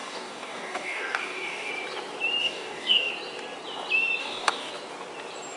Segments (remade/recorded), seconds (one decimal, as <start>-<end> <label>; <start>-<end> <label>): 0.0-1.7 remade; 1.7-2.4 recorded; 2.4-3.1 remade; 3.1-4.2 recorded; 4.2-4.7 remade; 4.7-5.6 recorded